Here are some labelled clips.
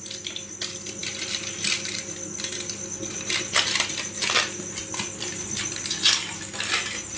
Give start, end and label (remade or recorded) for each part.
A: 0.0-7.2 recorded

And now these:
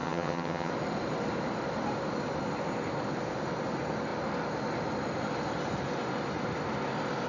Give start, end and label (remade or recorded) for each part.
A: 0.0-0.7 remade; 0.7-7.3 recorded

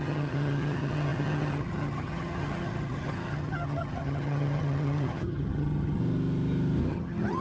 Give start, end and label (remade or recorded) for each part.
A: 0.0-6.0 remade; 6.0-6.9 recorded; 6.9-7.4 remade

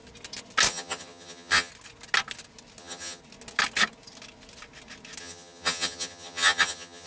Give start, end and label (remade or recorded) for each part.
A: 0.0-0.7 recorded; 0.7-1.7 remade; 1.7-2.8 recorded; 2.8-3.2 remade; 3.2-5.2 recorded; 5.2-7.1 remade

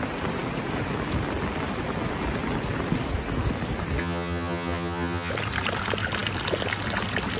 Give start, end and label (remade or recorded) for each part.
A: 0.0-4.0 recorded; 4.0-5.3 remade; 5.3-7.4 recorded

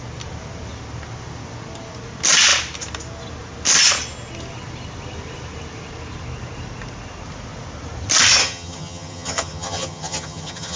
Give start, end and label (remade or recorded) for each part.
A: 0.0-8.4 recorded; 8.4-10.8 remade

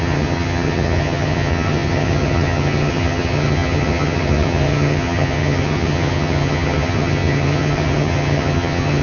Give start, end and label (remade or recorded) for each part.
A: 0.0-9.0 remade